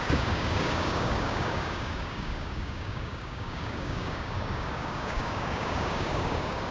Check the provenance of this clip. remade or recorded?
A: remade